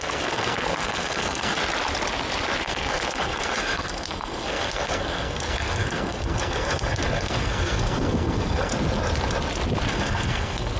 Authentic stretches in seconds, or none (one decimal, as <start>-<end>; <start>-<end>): 1.6-2.6; 8.7-9.9